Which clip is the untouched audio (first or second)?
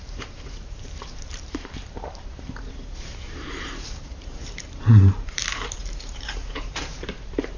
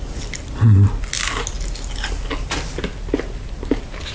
second